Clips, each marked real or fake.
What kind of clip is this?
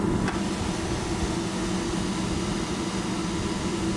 real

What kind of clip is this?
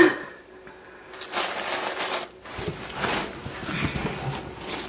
real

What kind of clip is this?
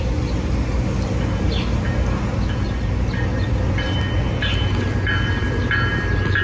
real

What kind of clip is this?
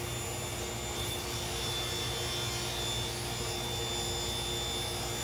real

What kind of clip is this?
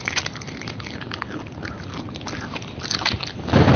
real